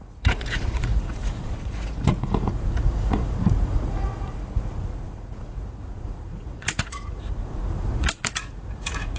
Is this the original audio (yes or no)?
no